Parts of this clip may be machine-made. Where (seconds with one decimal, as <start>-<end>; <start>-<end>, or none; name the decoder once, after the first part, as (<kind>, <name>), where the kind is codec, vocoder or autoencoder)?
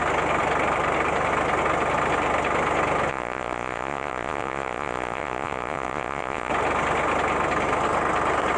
3.1-6.5 (vocoder, Vocos)